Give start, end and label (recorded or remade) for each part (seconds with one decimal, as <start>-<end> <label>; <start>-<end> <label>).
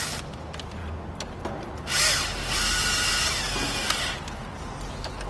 0.0-5.3 recorded